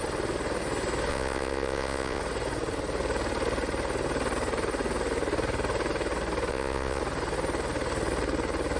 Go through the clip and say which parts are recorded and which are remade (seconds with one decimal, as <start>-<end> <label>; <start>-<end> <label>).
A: 0.0-1.1 recorded; 1.1-2.2 remade; 2.2-6.5 recorded; 6.5-7.0 remade; 7.0-8.8 recorded